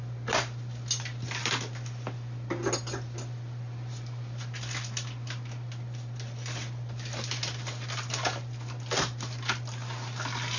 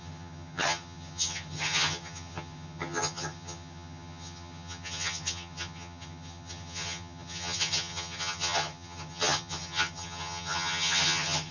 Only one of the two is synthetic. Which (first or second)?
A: second